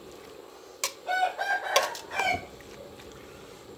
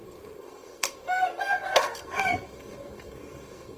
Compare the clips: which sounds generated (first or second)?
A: second